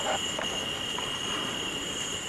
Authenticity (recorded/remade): recorded